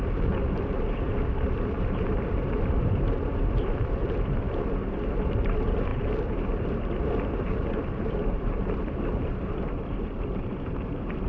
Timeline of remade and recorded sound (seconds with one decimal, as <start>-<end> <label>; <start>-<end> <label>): 0.0-11.3 remade